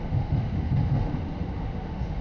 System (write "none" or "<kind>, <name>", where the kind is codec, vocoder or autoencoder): autoencoder, DAC-VAE